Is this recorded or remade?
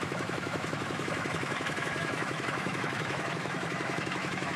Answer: remade